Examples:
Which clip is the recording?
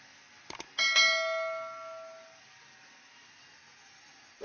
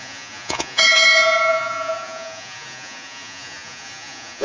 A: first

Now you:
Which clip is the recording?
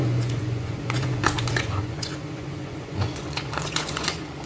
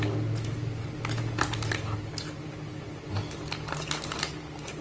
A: second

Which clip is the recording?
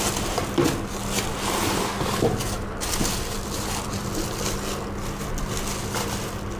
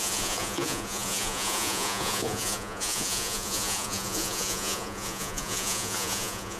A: first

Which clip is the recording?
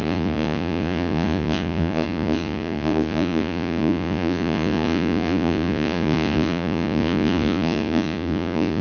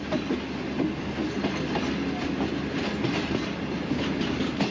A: second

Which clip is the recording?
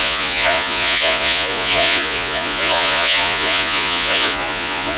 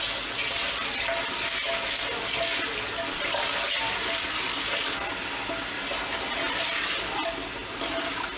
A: second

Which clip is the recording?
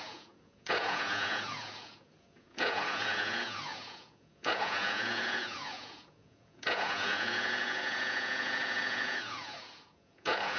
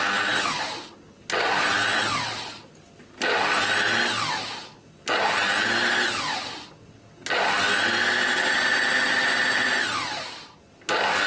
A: second